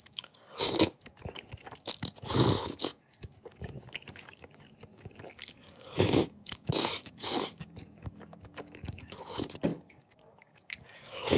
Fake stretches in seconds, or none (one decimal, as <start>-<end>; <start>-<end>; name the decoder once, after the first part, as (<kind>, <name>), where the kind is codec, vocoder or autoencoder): 0.0-11.4 (codec, DAC)